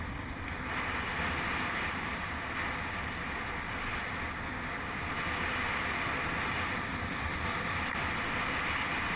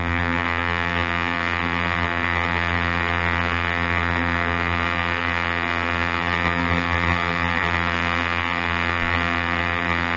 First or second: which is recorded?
first